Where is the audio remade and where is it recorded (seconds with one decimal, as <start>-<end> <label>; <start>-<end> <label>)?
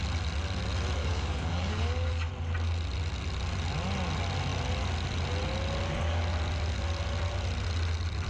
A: 0.0-1.0 recorded; 1.0-2.3 remade; 2.3-8.3 recorded